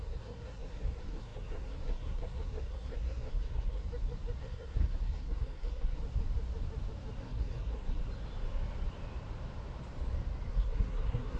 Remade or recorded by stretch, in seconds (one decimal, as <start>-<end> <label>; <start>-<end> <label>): 0.0-3.8 remade; 3.8-4.4 recorded; 4.4-6.0 remade; 6.0-7.2 recorded; 7.2-8.0 remade; 8.0-10.5 recorded; 10.5-11.4 remade